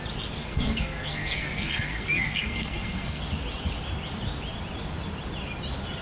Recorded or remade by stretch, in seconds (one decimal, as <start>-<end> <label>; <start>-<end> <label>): 0.0-0.4 recorded; 0.4-3.2 remade; 3.2-6.0 recorded